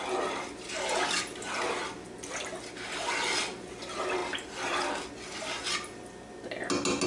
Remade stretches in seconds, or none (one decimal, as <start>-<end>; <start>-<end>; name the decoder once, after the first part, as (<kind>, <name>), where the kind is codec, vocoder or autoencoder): none